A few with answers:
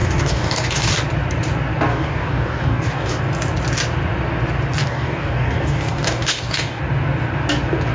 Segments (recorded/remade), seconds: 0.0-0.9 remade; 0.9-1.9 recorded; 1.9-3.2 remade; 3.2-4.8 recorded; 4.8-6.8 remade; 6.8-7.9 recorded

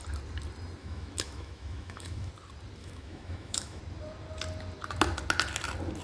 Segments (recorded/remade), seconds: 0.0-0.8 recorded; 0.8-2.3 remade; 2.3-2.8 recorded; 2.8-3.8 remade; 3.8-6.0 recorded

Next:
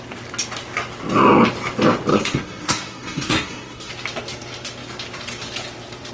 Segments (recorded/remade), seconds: 0.0-2.1 recorded; 2.1-3.9 remade; 3.9-6.1 recorded